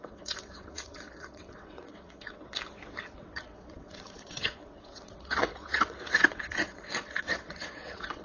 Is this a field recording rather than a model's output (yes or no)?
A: no